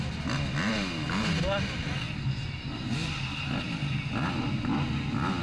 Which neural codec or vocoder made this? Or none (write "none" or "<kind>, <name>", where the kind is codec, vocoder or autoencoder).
none